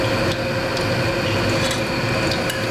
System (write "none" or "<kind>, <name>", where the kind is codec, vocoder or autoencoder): none